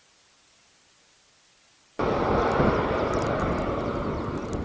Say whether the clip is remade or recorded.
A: recorded